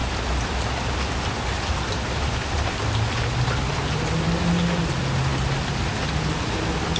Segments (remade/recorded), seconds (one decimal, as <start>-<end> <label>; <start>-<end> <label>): 0.0-7.0 recorded